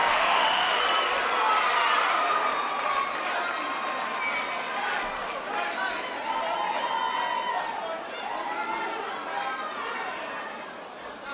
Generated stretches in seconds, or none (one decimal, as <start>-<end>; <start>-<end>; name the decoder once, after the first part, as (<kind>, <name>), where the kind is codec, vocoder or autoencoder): 0.0-0.8 (autoencoder, DAC-VAE)